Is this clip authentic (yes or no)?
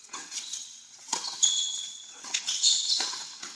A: no